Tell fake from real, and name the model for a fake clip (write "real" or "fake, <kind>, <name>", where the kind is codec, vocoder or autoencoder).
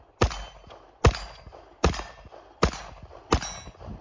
real